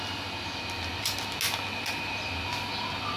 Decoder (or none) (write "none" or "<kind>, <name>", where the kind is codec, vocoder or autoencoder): none